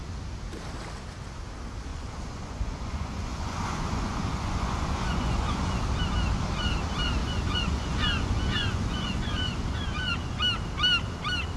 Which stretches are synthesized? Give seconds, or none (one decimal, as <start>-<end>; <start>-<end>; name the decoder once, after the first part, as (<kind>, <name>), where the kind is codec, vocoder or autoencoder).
1.9-5.8 (vocoder, Vocos); 7.2-10.4